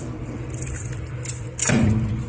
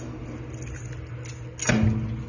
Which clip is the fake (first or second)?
first